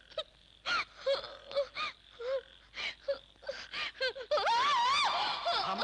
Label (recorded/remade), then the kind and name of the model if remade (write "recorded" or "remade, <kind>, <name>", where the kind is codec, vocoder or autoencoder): recorded